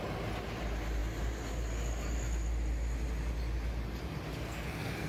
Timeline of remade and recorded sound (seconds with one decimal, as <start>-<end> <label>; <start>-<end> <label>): 0.0-4.3 recorded; 4.3-5.1 remade